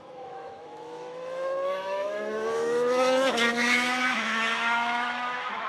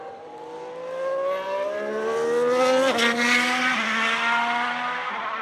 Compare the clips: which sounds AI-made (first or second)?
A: first